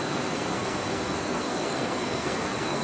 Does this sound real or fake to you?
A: fake